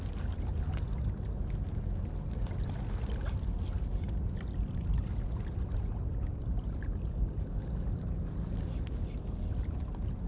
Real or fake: real